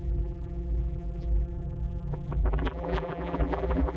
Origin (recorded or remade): remade